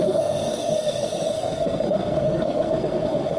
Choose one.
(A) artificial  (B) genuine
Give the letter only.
A